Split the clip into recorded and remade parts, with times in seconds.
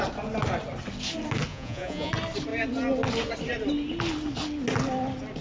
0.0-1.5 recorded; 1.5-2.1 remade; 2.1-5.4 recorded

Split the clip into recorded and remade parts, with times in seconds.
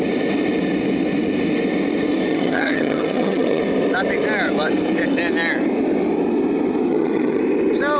0.0-2.3 recorded; 2.3-3.6 remade; 3.6-6.9 recorded; 6.9-7.4 remade; 7.4-8.0 recorded